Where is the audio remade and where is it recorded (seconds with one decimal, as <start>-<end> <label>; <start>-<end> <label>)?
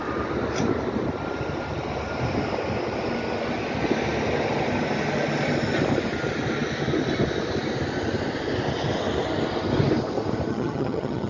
0.0-10.5 recorded; 10.5-11.3 remade